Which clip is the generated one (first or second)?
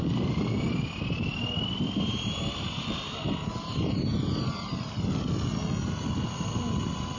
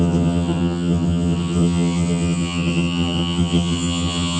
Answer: second